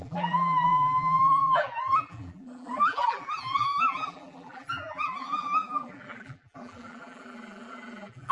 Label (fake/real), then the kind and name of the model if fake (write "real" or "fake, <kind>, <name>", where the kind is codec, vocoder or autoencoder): fake, vocoder, BigVGAN v2